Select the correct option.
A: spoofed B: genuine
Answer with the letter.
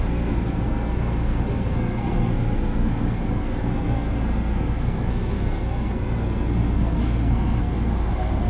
A